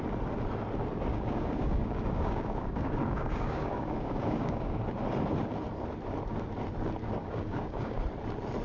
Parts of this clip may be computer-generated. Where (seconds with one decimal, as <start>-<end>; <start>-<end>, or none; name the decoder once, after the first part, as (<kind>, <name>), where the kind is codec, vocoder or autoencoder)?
1.1-4.8 (codec, DAC); 7.2-8.0

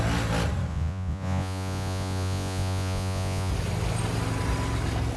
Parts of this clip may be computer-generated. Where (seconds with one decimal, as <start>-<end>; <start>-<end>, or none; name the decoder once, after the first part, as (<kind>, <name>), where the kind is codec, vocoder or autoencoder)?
0.7-3.5 (vocoder, Vocos)

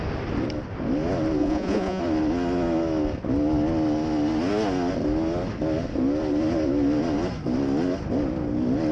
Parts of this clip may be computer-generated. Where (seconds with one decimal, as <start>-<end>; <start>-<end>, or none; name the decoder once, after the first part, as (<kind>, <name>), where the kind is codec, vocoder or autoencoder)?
1.4-2.0 (vocoder, Vocos)

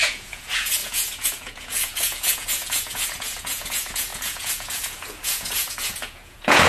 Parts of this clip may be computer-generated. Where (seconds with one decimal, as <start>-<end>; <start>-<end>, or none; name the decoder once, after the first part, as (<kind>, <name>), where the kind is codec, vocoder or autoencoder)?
0.0-6.7 (vocoder, Vocos)

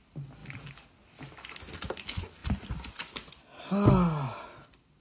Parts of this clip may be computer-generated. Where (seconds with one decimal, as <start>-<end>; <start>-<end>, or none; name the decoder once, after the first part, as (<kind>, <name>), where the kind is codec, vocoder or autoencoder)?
none

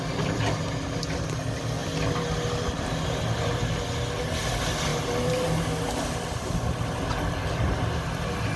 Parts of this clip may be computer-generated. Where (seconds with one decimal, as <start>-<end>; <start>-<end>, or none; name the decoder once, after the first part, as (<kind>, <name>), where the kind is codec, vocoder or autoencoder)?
none